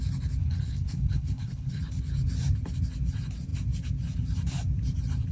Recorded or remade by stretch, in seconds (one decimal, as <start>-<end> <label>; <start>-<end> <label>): 0.0-0.4 recorded; 0.4-1.8 remade; 1.8-5.3 recorded